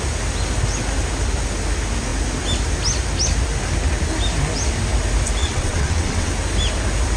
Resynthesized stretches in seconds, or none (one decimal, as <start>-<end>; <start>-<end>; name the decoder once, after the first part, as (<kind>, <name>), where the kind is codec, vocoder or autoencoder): 5.4-6.3 (vocoder, WaveNeXt)